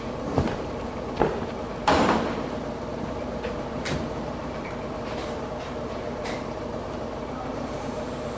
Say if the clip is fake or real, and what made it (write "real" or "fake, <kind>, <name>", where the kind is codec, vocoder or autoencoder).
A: fake, vocoder, BigVGAN v2